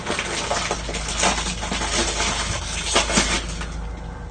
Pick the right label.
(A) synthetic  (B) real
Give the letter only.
B